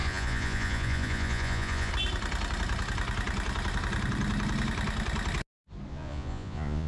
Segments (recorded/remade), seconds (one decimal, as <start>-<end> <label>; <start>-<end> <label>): 0.0-1.9 remade; 1.9-5.9 recorded; 5.9-6.9 remade